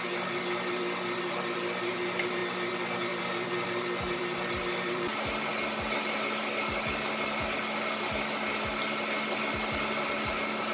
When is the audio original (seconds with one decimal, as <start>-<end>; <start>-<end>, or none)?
0.0-10.7